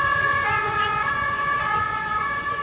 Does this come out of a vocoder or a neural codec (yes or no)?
yes